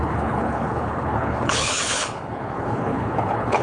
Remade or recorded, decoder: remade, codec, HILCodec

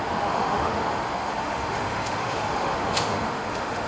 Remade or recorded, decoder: remade, autoencoder, DAC-VAE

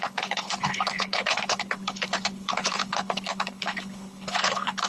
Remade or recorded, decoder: remade, codec, HILCodec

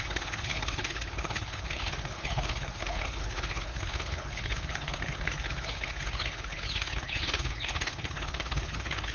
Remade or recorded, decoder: remade, codec, HILCodec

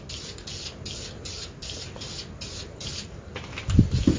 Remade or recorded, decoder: recorded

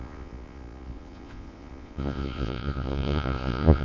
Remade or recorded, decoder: remade, vocoder, Vocos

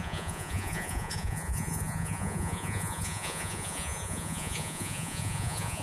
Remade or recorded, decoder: remade, vocoder, Vocos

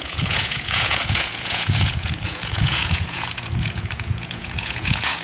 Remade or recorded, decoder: remade, vocoder, Vocos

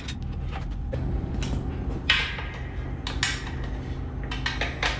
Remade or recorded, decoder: recorded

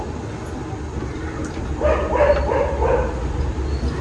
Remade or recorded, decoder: recorded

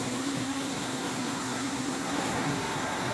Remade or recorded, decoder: remade, codec, SNAC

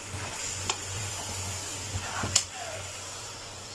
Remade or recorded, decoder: remade, vocoder, Vocos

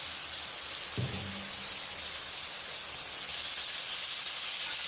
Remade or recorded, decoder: recorded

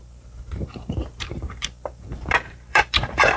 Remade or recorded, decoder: remade, vocoder, BigVGAN v2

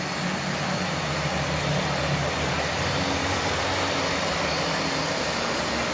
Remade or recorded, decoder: recorded